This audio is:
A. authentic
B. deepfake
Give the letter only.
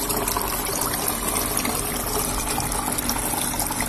A